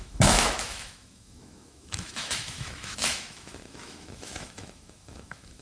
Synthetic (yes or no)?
yes